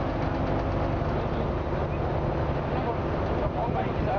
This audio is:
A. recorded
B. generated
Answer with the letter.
A